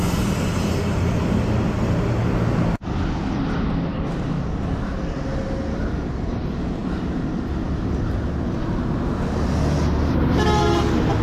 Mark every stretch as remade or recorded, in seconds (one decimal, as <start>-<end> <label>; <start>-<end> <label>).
0.0-11.2 recorded